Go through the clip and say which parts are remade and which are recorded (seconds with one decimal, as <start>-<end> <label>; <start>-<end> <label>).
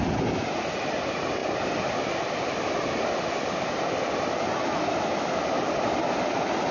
0.0-6.7 recorded